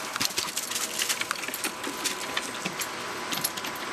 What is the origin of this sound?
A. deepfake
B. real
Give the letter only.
B